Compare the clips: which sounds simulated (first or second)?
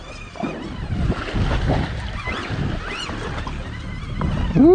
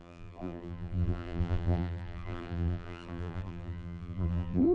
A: second